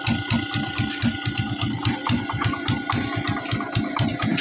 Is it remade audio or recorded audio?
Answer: recorded